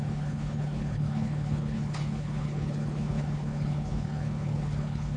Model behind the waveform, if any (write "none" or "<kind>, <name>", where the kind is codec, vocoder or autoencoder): codec, HILCodec